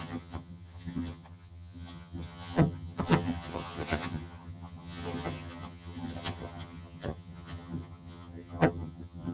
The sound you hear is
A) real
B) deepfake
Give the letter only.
B